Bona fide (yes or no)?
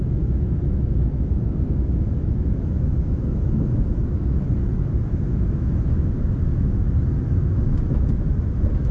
no